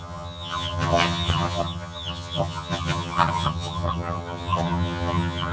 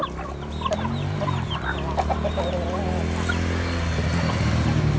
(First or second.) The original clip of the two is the second